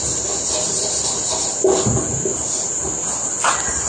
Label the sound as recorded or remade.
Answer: recorded